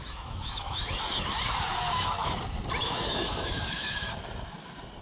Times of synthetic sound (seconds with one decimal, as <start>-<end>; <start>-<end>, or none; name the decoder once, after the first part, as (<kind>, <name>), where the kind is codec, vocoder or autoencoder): 0.0-1.0 (autoencoder, DAC-VAE); 1.7-2.4; 2.8-4.1